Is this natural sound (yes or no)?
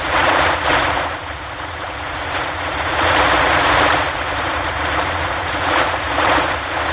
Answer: no